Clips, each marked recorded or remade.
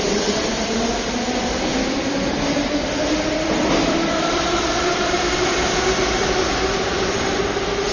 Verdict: remade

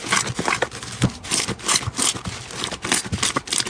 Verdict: recorded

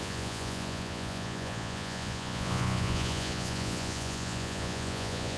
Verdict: remade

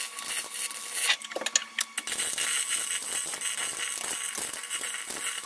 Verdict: recorded